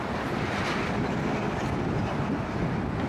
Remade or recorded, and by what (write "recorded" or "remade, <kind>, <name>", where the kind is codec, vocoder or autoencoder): recorded